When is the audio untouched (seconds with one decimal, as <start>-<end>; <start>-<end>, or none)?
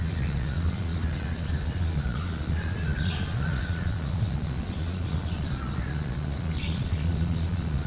none